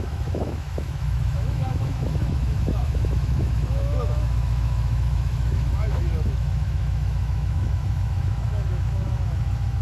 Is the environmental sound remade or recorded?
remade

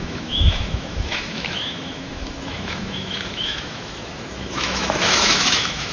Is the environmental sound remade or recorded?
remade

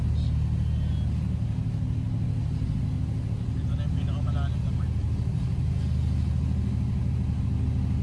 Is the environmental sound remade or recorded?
recorded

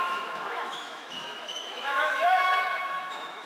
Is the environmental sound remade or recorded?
remade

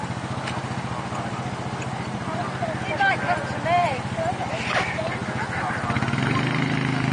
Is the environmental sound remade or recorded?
recorded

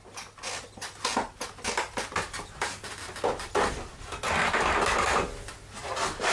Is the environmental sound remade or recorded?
recorded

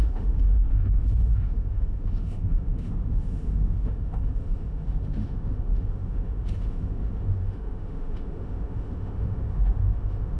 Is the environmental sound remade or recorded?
remade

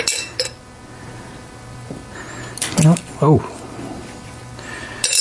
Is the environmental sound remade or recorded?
recorded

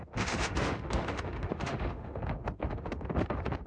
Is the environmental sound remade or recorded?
remade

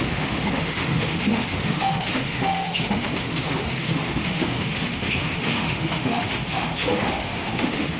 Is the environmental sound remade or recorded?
remade